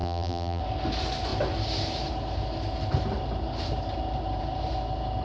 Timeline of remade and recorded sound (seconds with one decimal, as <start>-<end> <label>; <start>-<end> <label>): 0.0-0.6 remade; 0.6-5.2 recorded